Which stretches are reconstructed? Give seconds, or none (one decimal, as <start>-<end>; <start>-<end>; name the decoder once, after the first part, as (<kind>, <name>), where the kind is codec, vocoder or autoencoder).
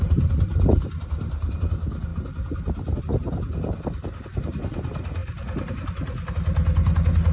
none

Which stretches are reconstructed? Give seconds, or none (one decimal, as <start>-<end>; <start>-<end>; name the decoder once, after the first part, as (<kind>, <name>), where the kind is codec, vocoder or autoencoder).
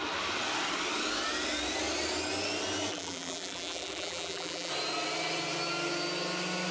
2.9-4.7 (vocoder, BigVGAN v2)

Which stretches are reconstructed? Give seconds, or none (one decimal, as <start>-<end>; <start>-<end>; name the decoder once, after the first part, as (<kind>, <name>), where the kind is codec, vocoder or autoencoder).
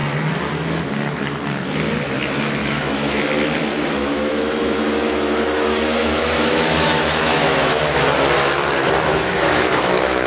2.6-3.2 (autoencoder, DAC-VAE); 4.0-7.8; 9.1-10.3